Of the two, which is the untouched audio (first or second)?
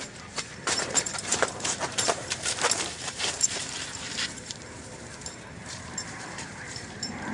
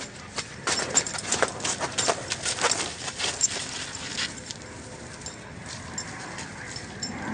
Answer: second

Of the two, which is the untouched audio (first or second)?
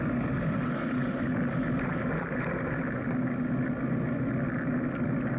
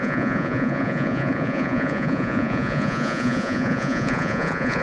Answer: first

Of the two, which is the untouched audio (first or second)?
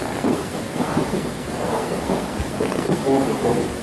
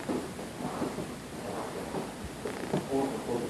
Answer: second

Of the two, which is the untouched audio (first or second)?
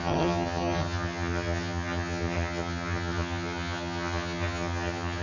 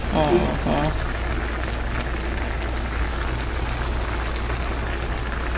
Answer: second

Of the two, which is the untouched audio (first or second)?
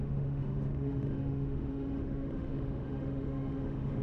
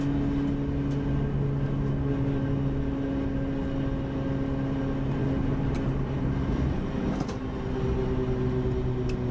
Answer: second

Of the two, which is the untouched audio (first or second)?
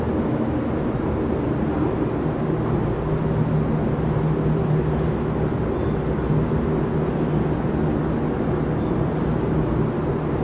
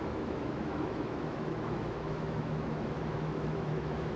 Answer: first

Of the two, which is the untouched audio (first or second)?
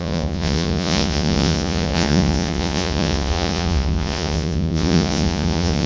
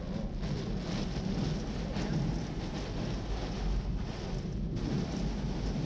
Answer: second